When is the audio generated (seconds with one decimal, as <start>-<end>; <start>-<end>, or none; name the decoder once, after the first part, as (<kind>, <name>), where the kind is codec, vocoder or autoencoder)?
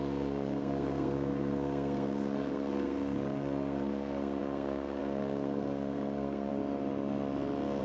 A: 0.0-6.5 (codec, SNAC)